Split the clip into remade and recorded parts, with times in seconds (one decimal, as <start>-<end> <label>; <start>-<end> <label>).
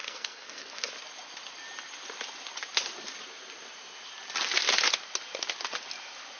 0.0-0.9 remade; 0.9-6.4 recorded